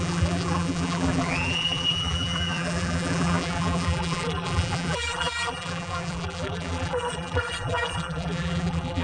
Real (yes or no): no